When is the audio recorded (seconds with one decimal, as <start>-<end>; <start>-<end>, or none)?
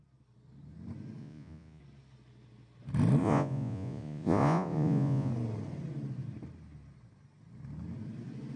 0.0-1.2; 1.8-3.2; 5.3-8.6